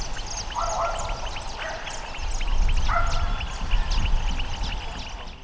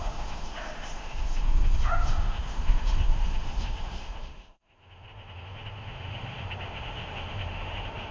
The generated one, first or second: second